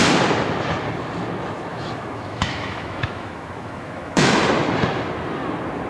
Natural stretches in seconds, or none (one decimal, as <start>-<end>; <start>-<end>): 0.0-1.7; 4.4-5.9

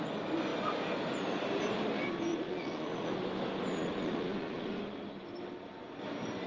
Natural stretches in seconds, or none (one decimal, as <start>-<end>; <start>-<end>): 0.0-2.3; 3.1-3.7; 4.8-6.5

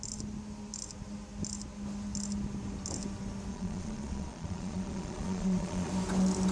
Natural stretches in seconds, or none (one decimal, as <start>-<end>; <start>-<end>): 0.0-3.5; 5.9-6.5

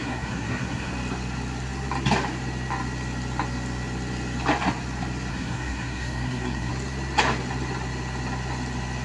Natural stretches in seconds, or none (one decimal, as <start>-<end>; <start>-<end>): 0.9-5.3; 6.7-9.0

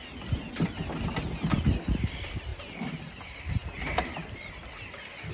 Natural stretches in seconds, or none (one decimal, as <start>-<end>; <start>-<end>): 0.0-5.3